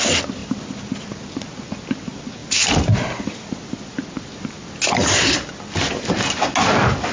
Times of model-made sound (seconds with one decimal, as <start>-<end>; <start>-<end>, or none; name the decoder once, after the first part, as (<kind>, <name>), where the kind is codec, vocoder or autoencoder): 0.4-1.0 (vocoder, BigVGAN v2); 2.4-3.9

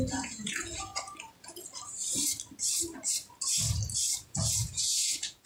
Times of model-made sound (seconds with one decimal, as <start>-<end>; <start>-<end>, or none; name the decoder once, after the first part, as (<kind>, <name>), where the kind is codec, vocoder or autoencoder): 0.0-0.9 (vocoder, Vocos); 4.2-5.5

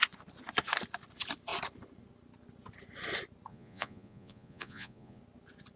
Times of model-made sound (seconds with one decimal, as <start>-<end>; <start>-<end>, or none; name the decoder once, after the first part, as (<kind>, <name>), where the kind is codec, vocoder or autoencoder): 3.5-5.2 (vocoder, Vocos)